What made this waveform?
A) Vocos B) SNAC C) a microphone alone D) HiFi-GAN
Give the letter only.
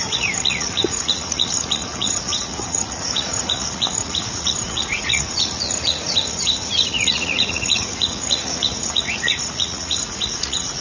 A